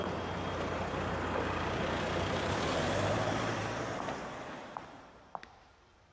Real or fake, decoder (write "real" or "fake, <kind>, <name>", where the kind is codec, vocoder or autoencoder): fake, vocoder, BigVGAN v2